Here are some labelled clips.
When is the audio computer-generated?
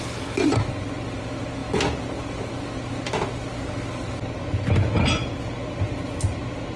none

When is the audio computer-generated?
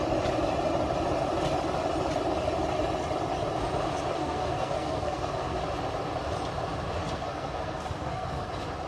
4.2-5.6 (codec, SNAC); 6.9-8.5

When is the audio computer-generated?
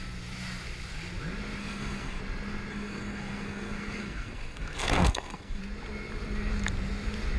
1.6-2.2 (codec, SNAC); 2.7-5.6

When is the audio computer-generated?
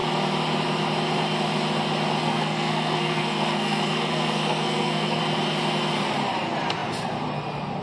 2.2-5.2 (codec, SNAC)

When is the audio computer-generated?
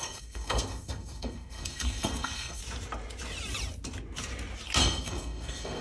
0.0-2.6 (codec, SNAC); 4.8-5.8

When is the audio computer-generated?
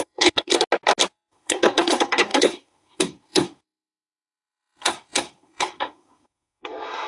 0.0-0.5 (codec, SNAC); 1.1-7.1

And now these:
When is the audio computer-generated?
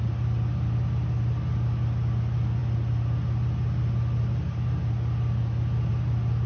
none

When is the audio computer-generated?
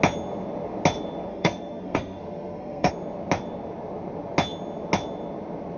1.3-2.9 (codec, SNAC)